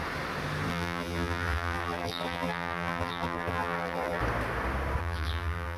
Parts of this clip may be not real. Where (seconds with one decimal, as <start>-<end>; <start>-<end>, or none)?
0.7-4.2; 5.0-5.8